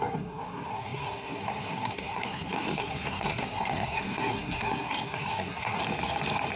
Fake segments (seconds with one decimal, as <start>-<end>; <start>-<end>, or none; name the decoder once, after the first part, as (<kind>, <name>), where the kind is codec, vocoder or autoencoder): 0.0-5.8 (codec, SNAC)